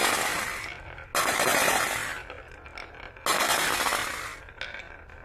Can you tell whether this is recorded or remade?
recorded